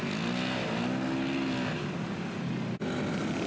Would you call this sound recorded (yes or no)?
yes